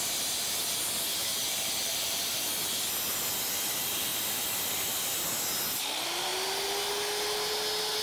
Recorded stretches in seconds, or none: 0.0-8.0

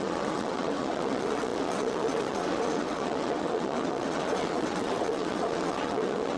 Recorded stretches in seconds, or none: none

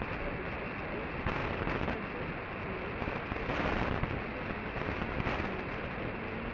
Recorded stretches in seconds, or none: 0.0-6.5

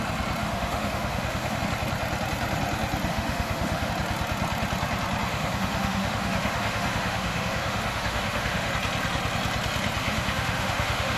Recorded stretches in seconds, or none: 0.0-0.4; 1.6-3.1; 3.9-5.3; 8.7-10.0

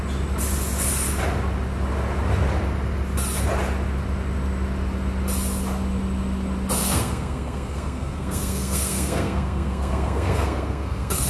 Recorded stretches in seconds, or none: 0.0-6.8